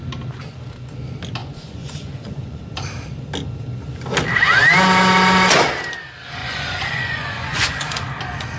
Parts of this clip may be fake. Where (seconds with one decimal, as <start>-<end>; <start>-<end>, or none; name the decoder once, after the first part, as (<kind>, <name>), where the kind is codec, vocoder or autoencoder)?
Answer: 1.4-2.6 (vocoder, Vocos); 6.4-8.1